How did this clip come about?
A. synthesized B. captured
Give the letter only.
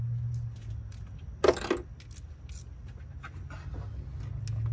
B